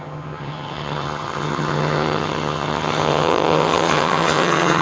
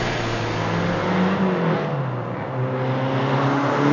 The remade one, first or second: first